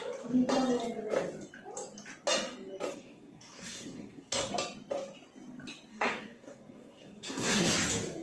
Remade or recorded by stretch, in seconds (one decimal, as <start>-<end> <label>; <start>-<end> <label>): 0.0-2.9 recorded; 2.9-4.5 remade; 4.5-5.9 recorded; 5.9-7.7 remade; 7.7-8.2 recorded